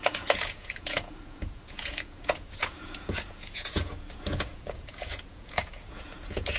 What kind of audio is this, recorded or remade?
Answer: remade